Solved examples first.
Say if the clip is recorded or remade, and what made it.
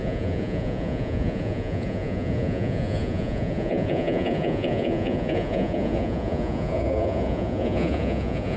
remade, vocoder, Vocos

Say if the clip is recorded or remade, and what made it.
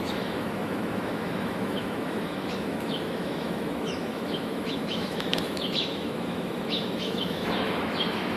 remade, autoencoder, DAC-VAE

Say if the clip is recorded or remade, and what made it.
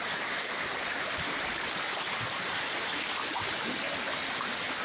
recorded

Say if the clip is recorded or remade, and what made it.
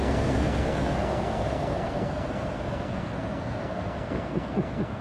remade, codec, SNAC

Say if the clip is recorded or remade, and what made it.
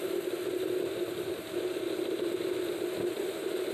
recorded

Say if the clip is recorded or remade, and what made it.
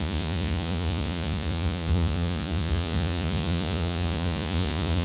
remade, vocoder, Vocos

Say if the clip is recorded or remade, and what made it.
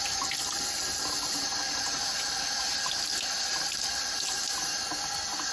recorded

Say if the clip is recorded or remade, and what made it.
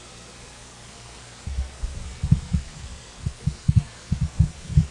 remade, codec, SNAC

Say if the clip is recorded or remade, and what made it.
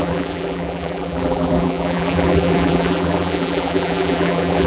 remade, vocoder, BigVGAN v2